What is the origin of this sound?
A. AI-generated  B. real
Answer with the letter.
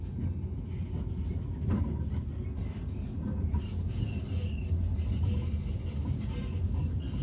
B